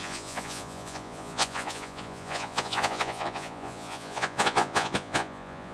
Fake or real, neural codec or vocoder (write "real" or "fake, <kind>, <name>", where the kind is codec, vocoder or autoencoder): fake, vocoder, Vocos